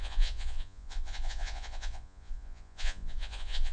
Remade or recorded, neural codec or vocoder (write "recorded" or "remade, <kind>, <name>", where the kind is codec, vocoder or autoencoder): remade, vocoder, Vocos